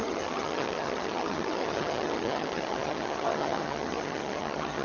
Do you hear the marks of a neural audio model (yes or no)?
yes